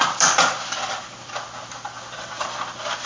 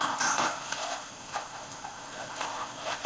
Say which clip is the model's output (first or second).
second